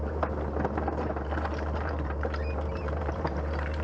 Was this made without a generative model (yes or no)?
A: no